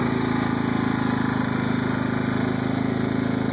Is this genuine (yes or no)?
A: yes